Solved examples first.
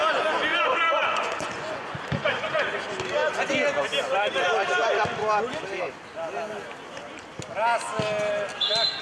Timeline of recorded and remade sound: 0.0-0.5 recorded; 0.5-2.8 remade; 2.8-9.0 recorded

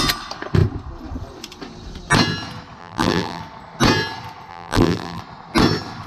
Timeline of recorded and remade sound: 0.0-2.8 recorded; 2.8-3.4 remade; 3.4-4.5 recorded; 4.5-5.2 remade; 5.2-6.1 recorded

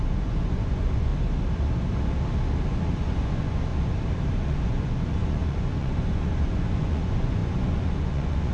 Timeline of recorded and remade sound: 0.0-1.1 remade; 1.1-2.9 recorded; 2.9-3.7 remade; 3.7-4.4 recorded; 4.4-8.5 remade

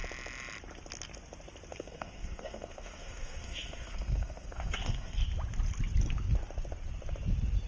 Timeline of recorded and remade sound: 0.0-1.7 recorded; 1.7-5.2 remade; 5.2-7.7 recorded

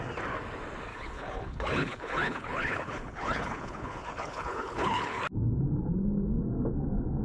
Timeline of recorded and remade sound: 0.0-0.9 recorded; 0.9-5.2 remade; 5.2-7.2 recorded

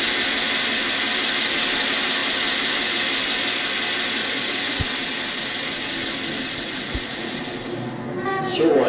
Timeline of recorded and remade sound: 0.0-4.2 recorded; 4.2-4.8 remade; 4.8-6.6 recorded; 6.6-7.4 remade; 7.4-8.9 recorded

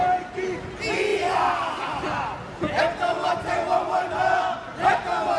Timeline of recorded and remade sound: 0.0-5.4 recorded